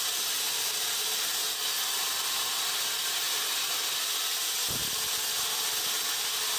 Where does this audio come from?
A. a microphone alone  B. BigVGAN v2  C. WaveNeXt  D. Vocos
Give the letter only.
A